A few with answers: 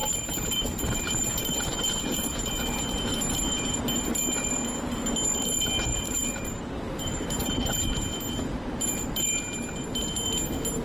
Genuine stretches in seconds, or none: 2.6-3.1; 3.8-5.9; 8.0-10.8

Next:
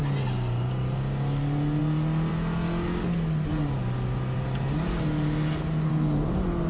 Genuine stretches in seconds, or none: 0.0-6.7

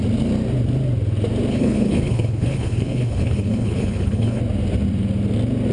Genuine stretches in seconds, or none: 0.0-1.5; 4.4-5.7

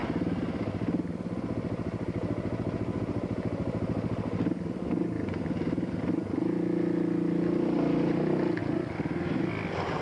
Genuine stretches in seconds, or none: 3.0-8.6; 9.5-10.0

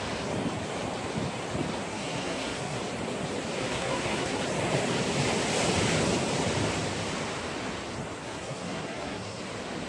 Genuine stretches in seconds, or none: 0.0-1.9; 2.8-3.7; 4.4-8.2; 9.4-9.9